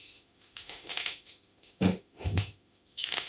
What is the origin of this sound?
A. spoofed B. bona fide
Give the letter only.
A